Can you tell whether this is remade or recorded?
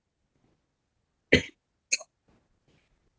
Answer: recorded